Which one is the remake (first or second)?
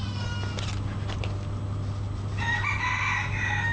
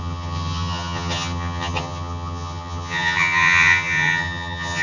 second